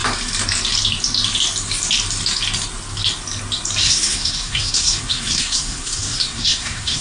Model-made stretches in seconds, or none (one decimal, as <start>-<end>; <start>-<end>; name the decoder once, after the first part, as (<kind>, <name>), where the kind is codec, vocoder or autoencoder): 3.8-7.0 (codec, SNAC)